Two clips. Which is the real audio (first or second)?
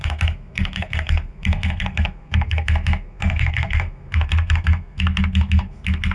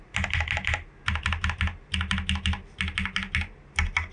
second